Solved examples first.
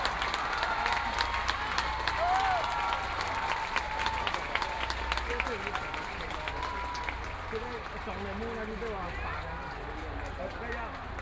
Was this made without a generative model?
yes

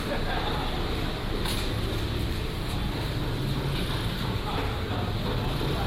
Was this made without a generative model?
yes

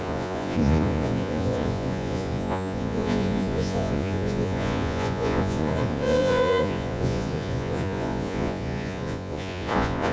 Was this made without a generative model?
no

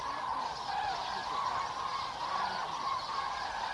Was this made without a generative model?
yes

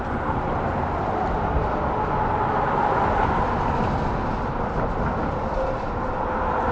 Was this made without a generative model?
yes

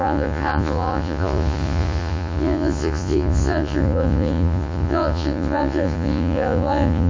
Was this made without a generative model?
no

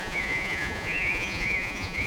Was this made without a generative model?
no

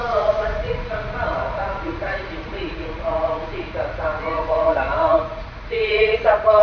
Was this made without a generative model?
no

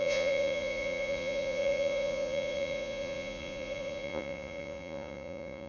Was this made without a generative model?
no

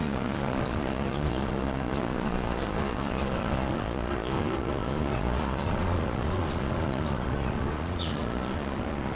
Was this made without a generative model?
no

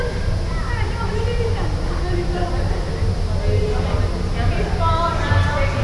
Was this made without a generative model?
yes